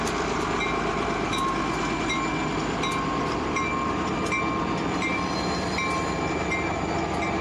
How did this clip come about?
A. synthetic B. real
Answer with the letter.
B